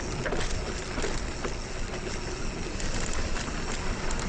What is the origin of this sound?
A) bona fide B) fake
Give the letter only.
A